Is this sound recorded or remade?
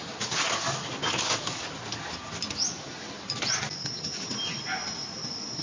recorded